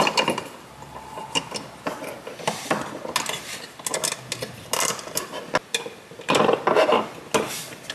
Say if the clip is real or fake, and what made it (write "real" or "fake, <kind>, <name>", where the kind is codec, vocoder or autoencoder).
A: real